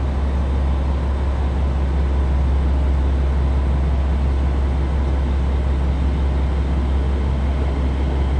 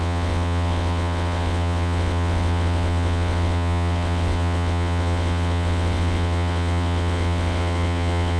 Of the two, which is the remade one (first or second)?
second